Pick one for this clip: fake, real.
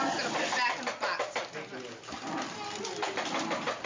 real